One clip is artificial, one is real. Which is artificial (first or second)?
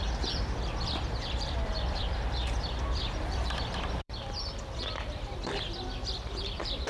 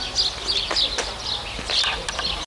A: first